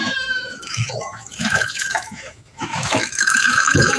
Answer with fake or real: fake